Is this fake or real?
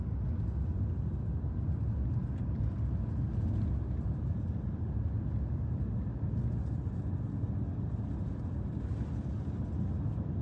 real